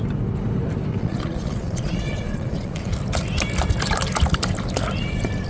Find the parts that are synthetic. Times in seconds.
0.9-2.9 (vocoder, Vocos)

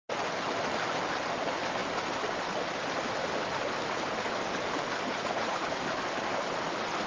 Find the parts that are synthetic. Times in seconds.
5.1-5.8 (vocoder, Vocos)

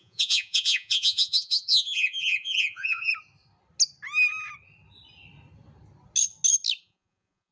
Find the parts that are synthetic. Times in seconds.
0.0-3.1 (vocoder, Vocos); 6.8-7.5